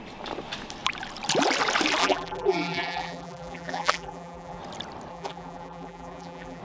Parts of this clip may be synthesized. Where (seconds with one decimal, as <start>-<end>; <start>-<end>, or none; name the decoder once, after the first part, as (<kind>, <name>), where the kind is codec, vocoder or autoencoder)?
2.0-4.6 (vocoder, BigVGAN v2); 5.1-6.6

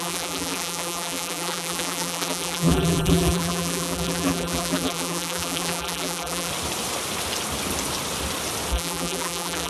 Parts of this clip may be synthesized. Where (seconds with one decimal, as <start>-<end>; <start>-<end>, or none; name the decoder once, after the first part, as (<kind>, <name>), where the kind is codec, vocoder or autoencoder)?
0.0-6.5 (vocoder, BigVGAN v2); 8.7-9.7

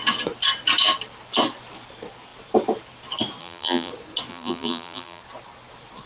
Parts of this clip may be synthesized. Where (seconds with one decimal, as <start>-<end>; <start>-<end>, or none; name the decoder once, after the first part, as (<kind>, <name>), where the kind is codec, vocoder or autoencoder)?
3.4-3.9 (vocoder, BigVGAN v2); 4.3-5.2

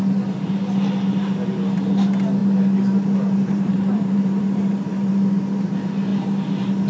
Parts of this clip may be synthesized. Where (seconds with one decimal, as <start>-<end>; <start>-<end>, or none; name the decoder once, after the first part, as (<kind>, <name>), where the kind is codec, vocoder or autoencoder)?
2.4-5.1 (vocoder, BigVGAN v2)

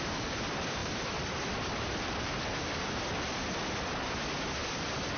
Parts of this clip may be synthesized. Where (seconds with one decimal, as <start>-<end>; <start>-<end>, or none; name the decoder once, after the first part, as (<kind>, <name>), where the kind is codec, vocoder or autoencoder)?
0.8-2.7 (vocoder, BigVGAN v2)

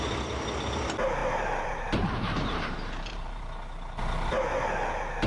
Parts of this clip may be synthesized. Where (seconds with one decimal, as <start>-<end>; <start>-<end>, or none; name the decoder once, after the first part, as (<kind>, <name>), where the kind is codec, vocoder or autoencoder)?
1.2-3.4 (vocoder, BigVGAN v2)

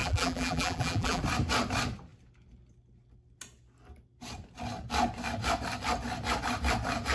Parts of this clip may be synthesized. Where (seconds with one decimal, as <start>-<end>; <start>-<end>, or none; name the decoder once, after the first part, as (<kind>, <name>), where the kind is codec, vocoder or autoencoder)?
0.0-1.2 (vocoder, BigVGAN v2)